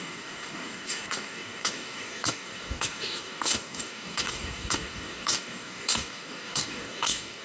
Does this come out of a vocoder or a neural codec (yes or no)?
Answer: yes